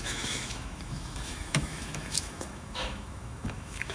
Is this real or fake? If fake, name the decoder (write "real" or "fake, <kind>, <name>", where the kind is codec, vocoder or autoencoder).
fake, autoencoder, DAC-VAE